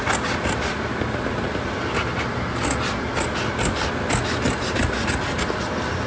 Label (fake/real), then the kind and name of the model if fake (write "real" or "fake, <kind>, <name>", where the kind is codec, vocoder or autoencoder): real